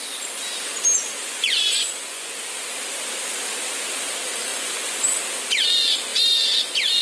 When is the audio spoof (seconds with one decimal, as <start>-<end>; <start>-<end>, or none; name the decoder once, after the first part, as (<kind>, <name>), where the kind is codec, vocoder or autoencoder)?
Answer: 1.2-2.3 (vocoder, Vocos); 4.5-5.0